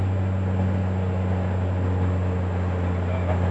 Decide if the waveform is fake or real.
real